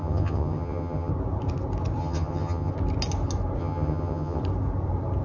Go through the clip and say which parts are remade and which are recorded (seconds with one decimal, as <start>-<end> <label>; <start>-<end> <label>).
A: 0.0-1.1 remade; 1.1-2.0 recorded; 2.0-2.7 remade; 2.7-3.6 recorded; 3.6-4.4 remade; 4.4-5.2 recorded